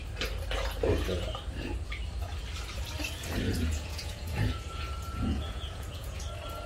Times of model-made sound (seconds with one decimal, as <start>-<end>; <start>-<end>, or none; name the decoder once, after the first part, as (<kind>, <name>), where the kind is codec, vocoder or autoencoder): 3.5-6.2 (vocoder, Vocos)